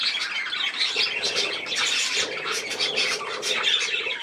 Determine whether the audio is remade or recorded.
remade